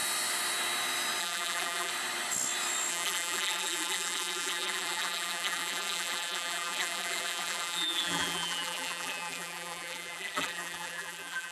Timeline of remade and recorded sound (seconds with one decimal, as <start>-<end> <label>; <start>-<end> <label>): 0.0-1.2 recorded; 1.2-1.9 remade; 1.9-2.9 recorded; 2.9-11.5 remade